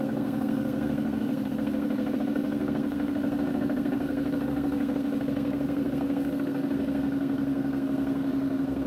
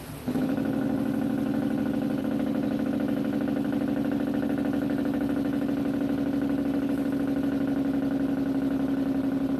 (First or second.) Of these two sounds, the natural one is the second